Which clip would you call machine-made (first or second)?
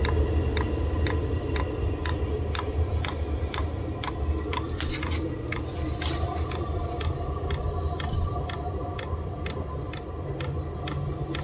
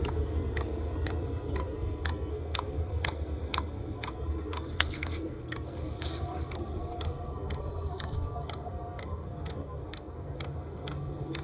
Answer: second